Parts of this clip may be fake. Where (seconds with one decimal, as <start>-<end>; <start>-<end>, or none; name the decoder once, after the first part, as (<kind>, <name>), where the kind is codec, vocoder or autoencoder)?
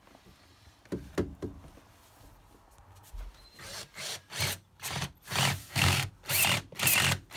5.6-6.1 (codec, SNAC)